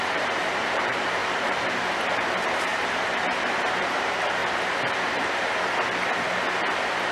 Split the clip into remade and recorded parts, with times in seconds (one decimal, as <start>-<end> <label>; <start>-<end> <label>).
0.0-4.4 remade; 4.4-7.1 recorded